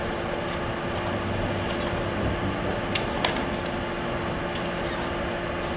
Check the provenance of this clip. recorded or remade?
recorded